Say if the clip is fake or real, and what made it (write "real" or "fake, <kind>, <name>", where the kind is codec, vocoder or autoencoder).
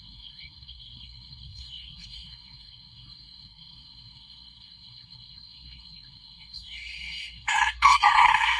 fake, codec, SNAC